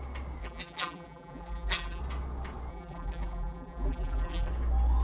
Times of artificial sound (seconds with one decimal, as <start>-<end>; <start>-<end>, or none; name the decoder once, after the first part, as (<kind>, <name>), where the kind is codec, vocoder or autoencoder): 0.4-2.0 (vocoder, BigVGAN v2); 2.7-4.5